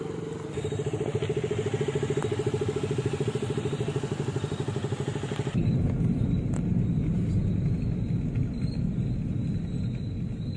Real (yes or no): yes